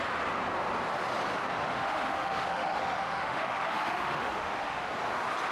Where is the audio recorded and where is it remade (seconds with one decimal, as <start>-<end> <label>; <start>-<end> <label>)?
0.0-1.6 recorded; 1.6-4.9 remade; 4.9-5.5 recorded